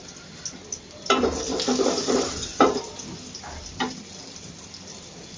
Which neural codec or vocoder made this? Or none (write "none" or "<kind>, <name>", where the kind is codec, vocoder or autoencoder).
none